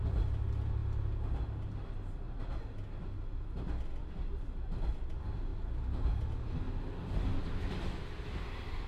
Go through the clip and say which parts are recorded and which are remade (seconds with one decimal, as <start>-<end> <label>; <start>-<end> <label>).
0.0-8.9 recorded